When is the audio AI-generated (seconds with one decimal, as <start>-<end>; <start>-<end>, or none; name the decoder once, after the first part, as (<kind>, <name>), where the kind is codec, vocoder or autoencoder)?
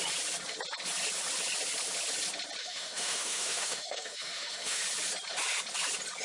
2.6-4.8 (autoencoder, DAC-VAE)